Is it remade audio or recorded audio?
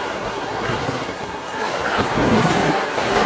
remade